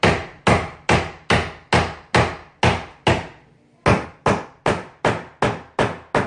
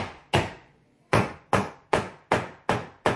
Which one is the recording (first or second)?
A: first